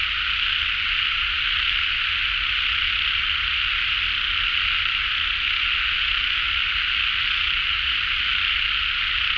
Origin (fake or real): real